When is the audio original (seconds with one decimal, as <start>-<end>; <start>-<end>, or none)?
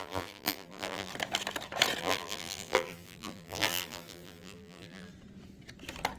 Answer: 1.1-2.0; 5.1-6.2